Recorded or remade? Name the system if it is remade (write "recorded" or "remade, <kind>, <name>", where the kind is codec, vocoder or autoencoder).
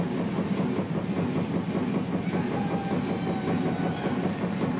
recorded